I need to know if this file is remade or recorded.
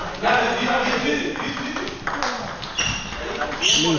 recorded